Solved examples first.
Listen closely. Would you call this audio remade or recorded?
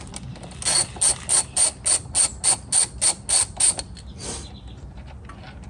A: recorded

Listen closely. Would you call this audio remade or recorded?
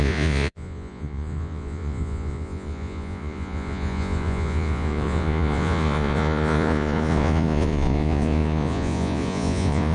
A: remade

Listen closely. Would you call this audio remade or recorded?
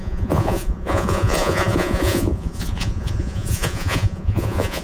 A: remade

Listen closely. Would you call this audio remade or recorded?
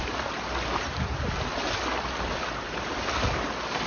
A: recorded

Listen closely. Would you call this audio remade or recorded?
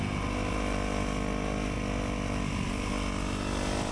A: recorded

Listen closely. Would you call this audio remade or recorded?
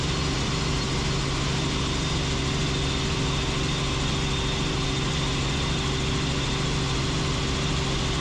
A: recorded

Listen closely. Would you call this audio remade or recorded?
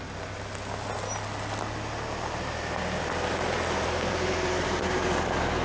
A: recorded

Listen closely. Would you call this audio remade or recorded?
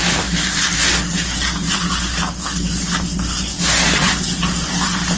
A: recorded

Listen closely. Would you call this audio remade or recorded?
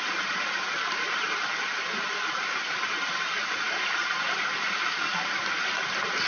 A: recorded